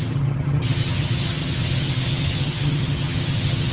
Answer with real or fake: fake